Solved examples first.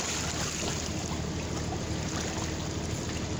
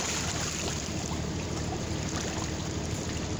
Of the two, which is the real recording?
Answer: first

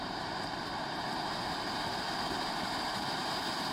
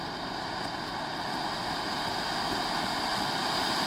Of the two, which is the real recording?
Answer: second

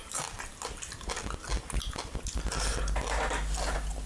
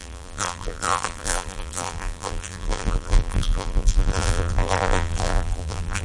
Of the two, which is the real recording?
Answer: first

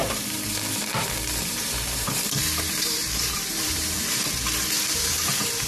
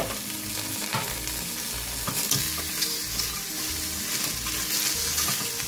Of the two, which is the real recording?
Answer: second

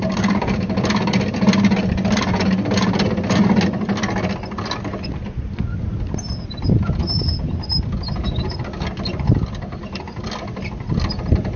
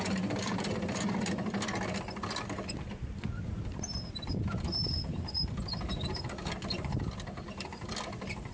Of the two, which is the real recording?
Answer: first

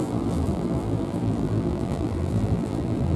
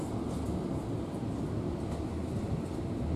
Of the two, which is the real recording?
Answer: second